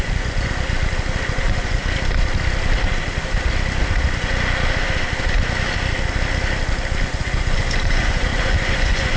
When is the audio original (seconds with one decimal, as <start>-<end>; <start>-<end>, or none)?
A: 0.5-1.3; 1.8-7.0

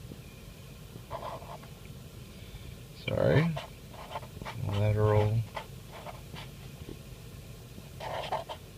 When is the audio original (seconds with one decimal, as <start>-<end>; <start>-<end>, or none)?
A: 0.0-8.8